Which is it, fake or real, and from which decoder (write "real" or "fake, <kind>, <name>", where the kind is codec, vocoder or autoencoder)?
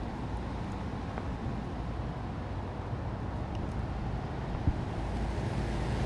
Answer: real